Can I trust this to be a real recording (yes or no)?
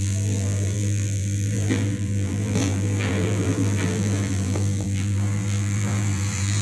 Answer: no